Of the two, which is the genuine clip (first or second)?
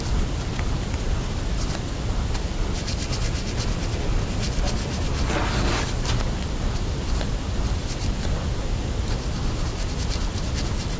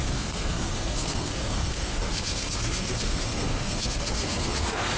first